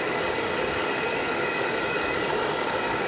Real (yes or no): no